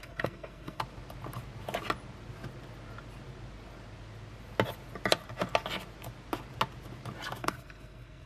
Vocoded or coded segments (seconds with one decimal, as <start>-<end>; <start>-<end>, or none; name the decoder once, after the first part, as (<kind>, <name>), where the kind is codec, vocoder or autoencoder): 0.0-0.8 (codec, SNAC); 7.4-8.3